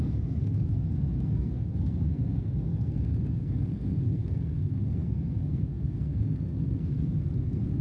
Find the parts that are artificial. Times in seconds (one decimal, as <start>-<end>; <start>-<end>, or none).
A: 0.0-7.8